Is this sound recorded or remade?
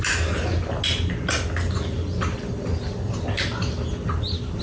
recorded